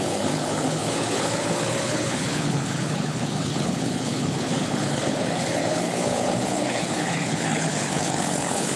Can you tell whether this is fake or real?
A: fake